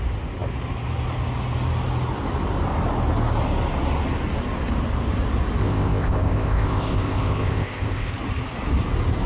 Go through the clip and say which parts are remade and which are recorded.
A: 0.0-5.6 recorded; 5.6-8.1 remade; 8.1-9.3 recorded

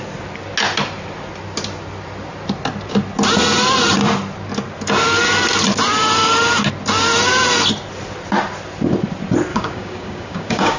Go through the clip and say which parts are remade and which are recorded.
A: 0.0-9.5 recorded; 9.5-10.8 remade

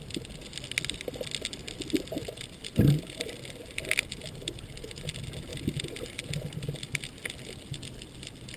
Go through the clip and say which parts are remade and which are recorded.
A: 0.0-8.6 recorded

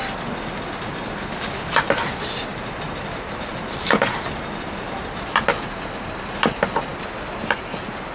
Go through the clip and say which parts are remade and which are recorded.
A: 0.0-2.5 recorded; 2.5-3.8 remade; 3.8-5.0 recorded; 5.0-6.1 remade; 6.1-8.1 recorded

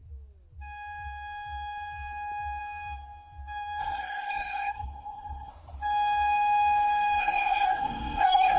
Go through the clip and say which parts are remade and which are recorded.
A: 0.0-3.8 recorded; 3.8-5.5 remade; 5.5-7.2 recorded; 7.2-8.6 remade

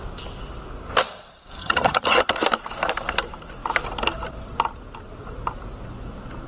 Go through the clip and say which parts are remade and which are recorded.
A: 0.0-1.6 recorded; 1.6-2.3 remade; 2.3-6.5 recorded

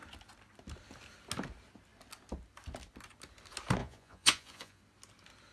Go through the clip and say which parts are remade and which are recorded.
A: 0.0-3.8 recorded; 3.8-4.8 remade; 4.8-5.5 recorded

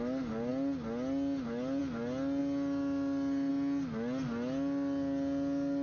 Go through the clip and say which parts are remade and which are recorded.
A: 0.0-5.8 recorded